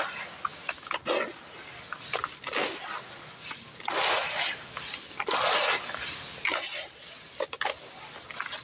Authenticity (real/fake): real